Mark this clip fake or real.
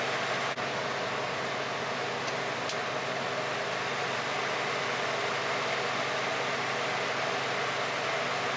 real